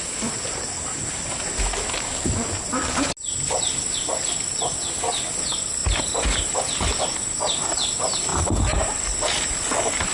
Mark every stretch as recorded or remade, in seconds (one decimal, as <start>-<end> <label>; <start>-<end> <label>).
0.0-8.3 recorded; 8.3-10.1 remade